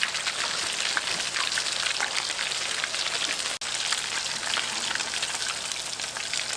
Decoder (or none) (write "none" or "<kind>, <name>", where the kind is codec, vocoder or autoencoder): none